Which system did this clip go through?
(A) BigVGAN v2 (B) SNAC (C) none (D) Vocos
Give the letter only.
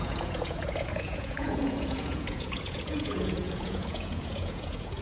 D